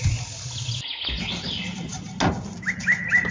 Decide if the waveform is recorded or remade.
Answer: recorded